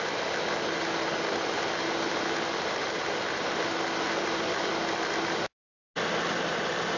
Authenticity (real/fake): real